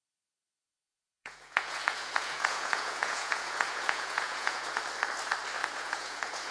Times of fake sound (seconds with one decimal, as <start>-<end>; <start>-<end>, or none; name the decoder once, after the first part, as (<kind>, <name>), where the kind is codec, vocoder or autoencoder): 0.9-4.8 (vocoder, Vocos); 5.6-6.5